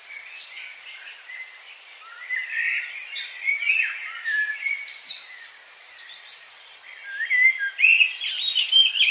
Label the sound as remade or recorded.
remade